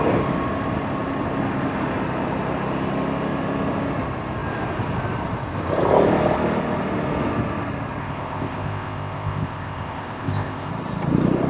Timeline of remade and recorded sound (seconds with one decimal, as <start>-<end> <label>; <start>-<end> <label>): 0.0-8.0 recorded; 8.0-10.7 remade; 10.7-11.5 recorded